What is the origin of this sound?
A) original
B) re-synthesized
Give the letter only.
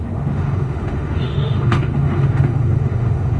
B